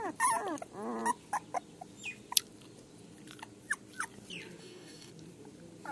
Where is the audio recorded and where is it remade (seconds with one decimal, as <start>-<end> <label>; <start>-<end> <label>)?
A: 0.0-4.6 recorded; 4.6-5.1 remade; 5.1-5.9 recorded